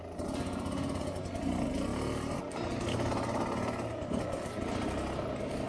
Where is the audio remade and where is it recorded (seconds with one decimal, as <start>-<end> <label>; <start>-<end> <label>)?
0.0-5.7 recorded